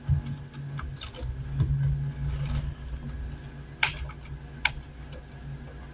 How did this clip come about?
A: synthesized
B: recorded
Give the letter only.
B